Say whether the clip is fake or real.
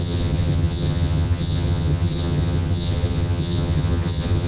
fake